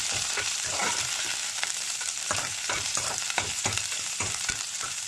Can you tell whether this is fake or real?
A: fake